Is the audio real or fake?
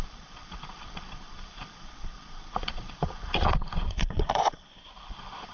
fake